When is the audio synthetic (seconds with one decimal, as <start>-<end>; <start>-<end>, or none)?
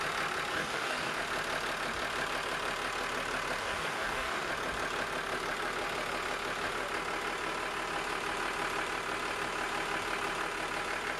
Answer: 0.5-1.2; 3.6-4.5